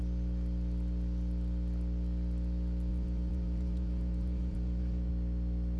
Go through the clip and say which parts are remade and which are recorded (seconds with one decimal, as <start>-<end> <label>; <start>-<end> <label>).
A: 0.0-2.9 recorded; 2.9-5.1 remade; 5.1-5.8 recorded